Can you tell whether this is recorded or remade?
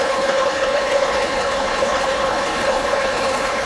remade